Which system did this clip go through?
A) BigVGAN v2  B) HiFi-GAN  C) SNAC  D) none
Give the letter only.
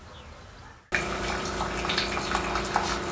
D